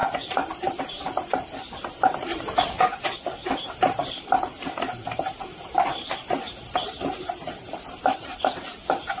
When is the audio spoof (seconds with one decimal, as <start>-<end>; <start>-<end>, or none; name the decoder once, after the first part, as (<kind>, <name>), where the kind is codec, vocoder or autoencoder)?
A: 0.0-9.2 (vocoder, BigVGAN v2)